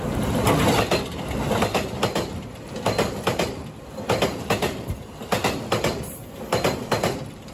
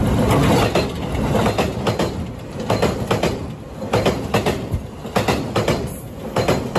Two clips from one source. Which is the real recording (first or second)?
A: second